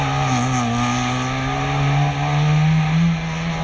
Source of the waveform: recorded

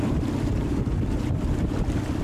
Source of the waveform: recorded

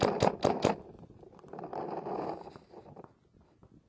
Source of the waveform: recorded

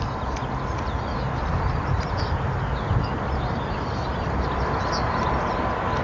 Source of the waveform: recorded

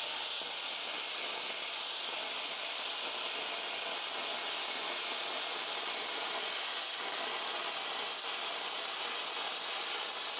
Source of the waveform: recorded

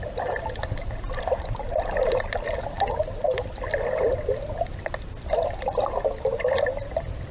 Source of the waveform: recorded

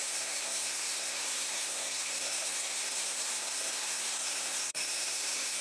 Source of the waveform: remade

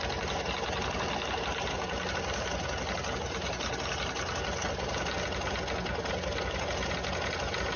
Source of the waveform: recorded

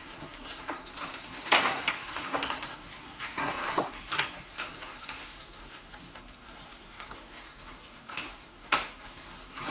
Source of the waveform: remade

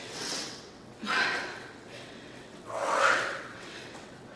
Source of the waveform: remade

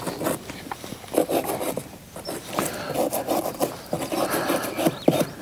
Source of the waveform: remade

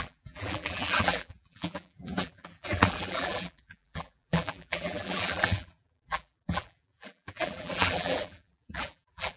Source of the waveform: remade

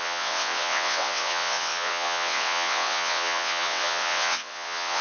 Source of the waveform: remade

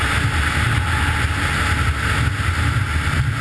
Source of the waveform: recorded